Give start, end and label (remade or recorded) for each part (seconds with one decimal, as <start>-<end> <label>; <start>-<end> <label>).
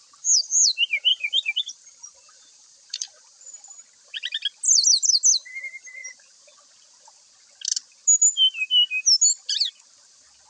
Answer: 0.0-1.1 recorded; 1.1-3.4 remade; 3.4-10.5 recorded